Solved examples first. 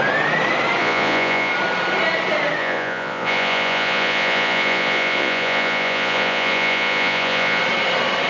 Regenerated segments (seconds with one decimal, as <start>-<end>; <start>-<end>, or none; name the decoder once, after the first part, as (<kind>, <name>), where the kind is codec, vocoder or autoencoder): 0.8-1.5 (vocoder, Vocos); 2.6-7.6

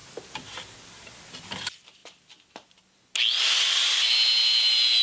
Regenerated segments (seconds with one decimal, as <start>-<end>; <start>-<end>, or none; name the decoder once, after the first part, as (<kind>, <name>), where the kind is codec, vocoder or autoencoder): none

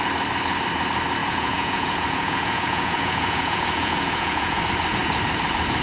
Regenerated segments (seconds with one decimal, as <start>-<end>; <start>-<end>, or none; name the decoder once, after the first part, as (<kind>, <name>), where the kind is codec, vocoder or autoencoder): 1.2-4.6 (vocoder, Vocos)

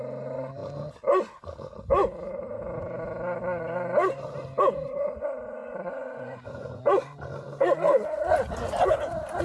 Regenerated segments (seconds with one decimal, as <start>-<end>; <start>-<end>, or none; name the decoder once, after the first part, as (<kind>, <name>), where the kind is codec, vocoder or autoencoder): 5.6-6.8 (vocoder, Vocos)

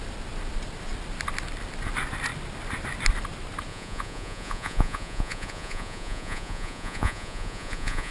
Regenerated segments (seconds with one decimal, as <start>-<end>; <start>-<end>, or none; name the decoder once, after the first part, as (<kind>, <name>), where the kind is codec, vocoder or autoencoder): 3.7-8.1 (vocoder, Vocos)

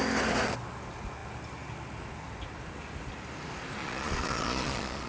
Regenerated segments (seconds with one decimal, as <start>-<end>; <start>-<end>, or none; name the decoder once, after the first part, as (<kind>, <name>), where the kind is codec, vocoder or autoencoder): 3.8-5.1 (vocoder, Vocos)

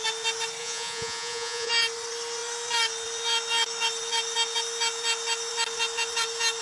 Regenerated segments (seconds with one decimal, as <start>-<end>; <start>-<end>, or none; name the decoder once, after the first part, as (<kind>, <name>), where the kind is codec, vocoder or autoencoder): 0.6-1.7 (vocoder, Vocos)

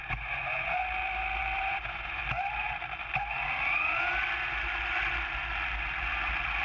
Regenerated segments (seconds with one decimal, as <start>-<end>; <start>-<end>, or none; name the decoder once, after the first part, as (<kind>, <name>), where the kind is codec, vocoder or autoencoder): 0.0-0.8 (vocoder, Vocos); 1.6-2.2